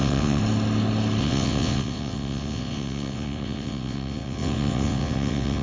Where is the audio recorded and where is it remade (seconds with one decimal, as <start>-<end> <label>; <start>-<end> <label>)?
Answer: 0.0-0.4 remade; 0.4-1.2 recorded; 1.2-5.6 remade